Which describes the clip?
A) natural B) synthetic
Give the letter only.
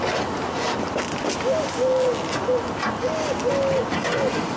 A